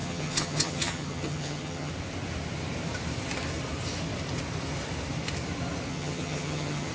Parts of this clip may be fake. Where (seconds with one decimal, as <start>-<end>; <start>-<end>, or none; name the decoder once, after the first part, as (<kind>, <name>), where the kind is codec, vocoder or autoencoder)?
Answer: 0.0-1.9 (vocoder, HiFi-GAN); 5.9-6.9